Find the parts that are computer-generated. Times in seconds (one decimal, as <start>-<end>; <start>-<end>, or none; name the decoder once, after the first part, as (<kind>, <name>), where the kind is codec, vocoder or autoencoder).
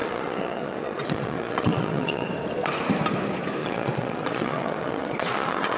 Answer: 0.0-2.3 (vocoder, Vocos); 3.6-5.8